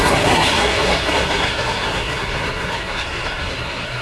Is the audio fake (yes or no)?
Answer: yes